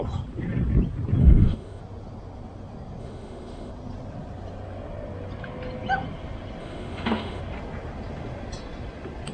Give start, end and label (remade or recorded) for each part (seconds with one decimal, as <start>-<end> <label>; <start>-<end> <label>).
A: 0.0-1.2 recorded; 1.2-1.8 remade; 1.8-3.0 recorded; 3.0-3.7 remade; 3.7-6.6 recorded; 6.6-7.4 remade; 7.4-9.3 recorded